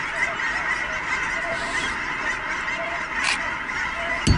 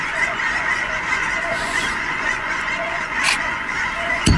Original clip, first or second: first